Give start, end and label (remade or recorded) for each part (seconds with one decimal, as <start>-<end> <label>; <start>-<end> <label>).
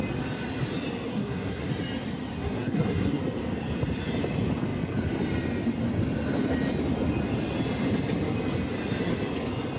0.0-1.1 recorded; 1.1-1.7 remade; 1.7-2.3 recorded; 2.3-3.2 remade; 3.2-9.8 recorded